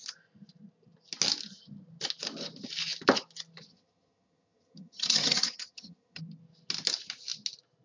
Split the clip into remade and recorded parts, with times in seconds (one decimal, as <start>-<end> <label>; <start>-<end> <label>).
0.0-3.7 recorded; 3.7-6.2 remade; 6.2-7.8 recorded